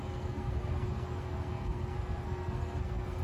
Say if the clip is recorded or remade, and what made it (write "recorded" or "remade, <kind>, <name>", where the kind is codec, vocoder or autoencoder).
remade, codec, SNAC